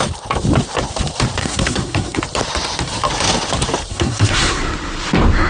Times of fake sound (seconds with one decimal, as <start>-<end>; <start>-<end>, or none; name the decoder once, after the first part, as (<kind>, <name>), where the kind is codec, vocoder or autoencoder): 1.4-2.2 (codec, SNAC); 3.9-4.6